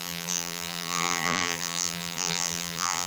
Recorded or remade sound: remade